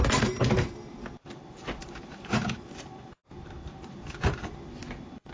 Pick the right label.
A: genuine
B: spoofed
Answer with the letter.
A